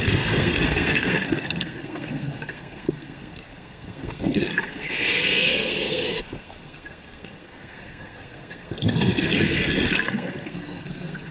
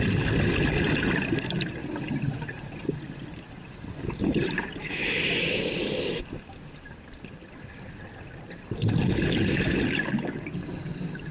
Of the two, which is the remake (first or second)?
first